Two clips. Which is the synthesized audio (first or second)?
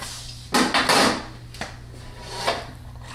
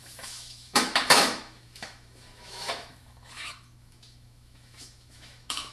second